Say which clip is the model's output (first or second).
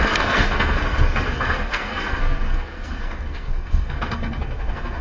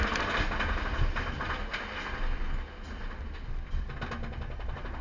first